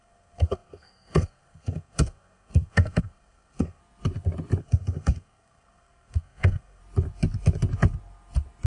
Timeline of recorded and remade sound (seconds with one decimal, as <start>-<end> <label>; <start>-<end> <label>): 0.0-3.8 remade; 3.8-4.6 recorded; 4.6-6.8 remade; 6.8-8.7 recorded

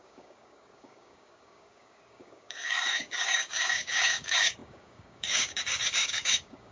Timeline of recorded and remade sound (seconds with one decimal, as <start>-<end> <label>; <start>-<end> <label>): 0.0-6.7 remade